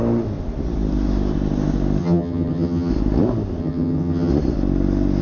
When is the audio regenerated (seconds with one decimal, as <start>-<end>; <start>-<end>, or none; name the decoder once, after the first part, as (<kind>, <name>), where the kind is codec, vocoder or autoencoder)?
2.0-2.9 (vocoder, HiFi-GAN); 3.6-4.3